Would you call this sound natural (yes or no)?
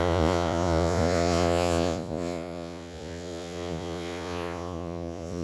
no